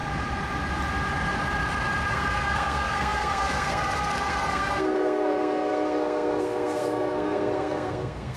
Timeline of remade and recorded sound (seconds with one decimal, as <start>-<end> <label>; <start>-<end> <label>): 0.0-2.1 recorded; 2.1-8.4 remade